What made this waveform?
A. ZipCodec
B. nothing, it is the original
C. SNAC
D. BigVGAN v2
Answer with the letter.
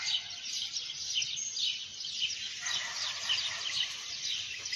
B